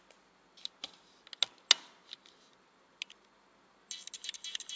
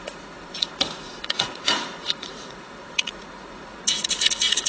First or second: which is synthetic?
second